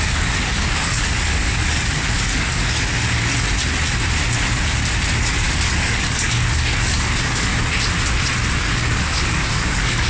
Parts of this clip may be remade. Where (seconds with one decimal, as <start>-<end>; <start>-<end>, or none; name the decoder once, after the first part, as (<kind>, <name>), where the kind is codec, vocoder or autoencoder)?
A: 0.0-3.3 (codec, DAC); 5.2-7.5; 8.6-10.1